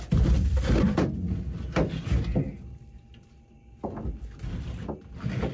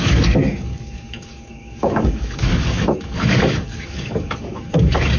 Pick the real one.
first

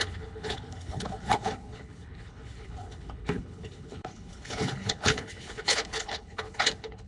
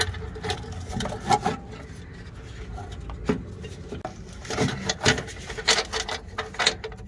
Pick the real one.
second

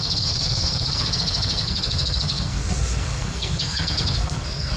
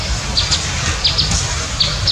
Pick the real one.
second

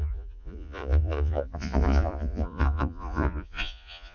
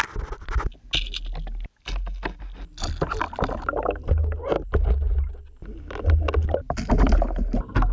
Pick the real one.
second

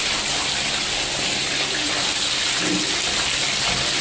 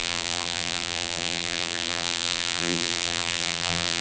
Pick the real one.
first